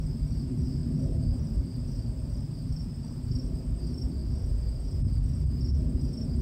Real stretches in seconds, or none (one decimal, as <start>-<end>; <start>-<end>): 4.2-6.4

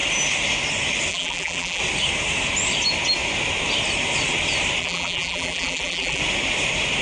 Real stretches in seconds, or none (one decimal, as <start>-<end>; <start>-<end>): 0.0-1.1; 1.8-4.8; 6.2-7.0

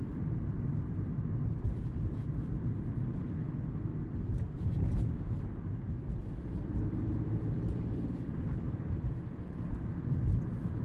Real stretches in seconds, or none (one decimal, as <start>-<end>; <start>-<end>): 3.9-6.4